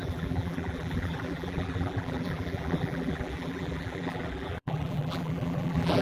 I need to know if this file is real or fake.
fake